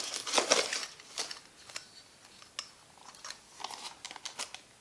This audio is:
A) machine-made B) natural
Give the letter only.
B